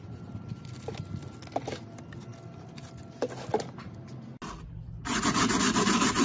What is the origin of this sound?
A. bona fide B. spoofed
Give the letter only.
A